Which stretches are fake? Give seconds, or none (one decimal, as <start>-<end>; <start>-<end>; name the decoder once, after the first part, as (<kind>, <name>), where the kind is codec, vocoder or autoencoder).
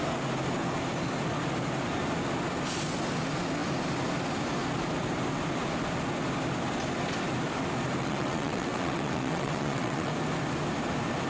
8.0-10.1 (vocoder, WaveNeXt)